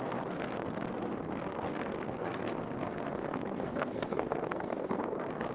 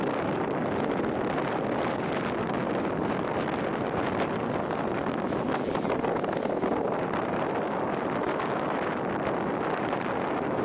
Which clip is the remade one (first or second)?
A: first